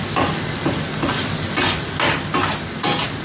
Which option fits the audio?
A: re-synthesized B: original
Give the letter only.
B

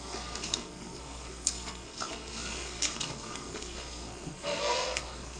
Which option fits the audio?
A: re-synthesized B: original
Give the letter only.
A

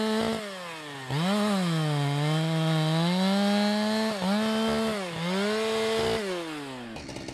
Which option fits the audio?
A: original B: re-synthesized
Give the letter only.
A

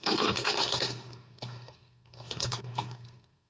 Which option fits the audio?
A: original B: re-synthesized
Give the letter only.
B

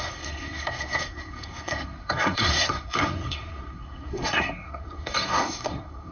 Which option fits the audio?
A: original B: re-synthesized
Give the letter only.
B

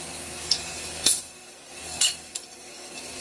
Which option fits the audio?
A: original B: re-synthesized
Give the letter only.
B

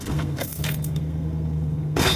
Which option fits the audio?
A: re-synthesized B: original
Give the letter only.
A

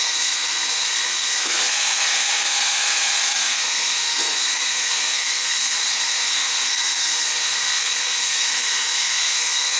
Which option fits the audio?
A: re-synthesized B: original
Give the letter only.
A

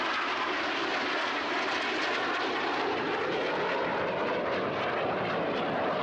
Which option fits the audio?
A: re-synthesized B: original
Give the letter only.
B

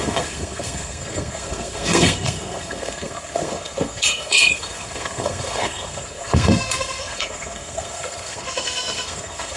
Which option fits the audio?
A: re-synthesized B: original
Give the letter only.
A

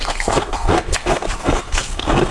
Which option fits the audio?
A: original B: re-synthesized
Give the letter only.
B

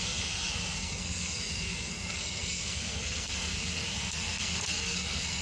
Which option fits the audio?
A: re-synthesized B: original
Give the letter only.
A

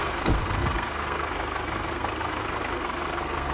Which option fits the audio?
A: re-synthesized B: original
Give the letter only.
A